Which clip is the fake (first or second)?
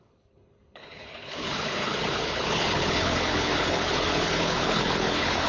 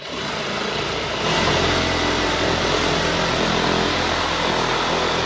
first